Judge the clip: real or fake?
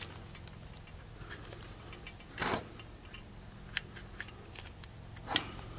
real